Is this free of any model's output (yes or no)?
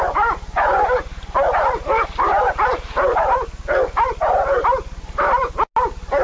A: yes